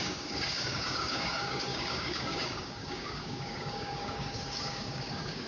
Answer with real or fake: fake